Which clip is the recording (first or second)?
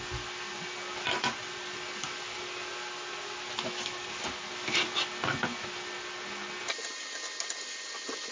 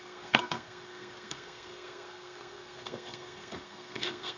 first